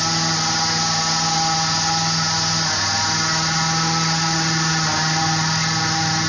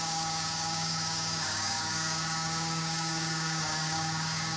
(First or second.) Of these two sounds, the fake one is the second